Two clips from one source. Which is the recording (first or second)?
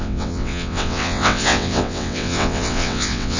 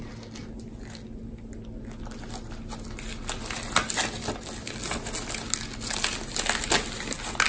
second